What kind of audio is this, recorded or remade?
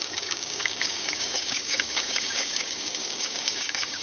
remade